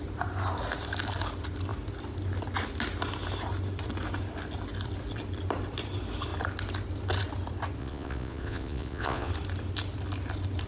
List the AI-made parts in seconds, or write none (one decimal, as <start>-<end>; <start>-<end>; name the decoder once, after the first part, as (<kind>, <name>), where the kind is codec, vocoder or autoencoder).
7.8-9.3 (vocoder, Vocos)